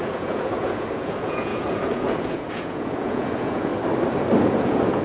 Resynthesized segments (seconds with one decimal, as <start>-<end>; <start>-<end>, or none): 0.0-3.7; 4.4-5.0